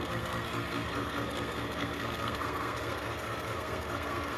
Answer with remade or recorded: remade